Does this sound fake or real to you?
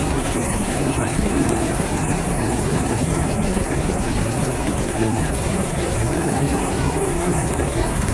fake